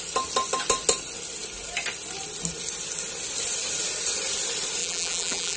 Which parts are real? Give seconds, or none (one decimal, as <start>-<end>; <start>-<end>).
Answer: 0.0-4.8